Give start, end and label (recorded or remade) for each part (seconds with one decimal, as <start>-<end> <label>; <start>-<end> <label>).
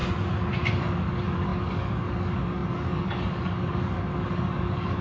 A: 0.0-0.7 recorded; 0.7-5.0 remade